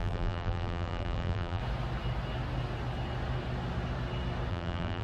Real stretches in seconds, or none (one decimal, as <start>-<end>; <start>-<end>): 1.6-4.5